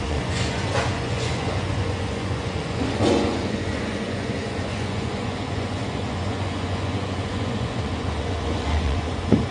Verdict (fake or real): fake